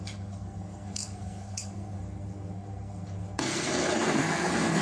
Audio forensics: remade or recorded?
remade